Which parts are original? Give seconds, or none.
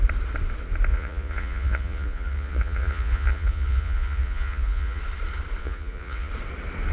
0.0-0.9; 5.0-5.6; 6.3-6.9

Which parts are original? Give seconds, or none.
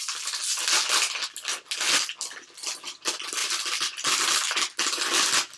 0.0-5.6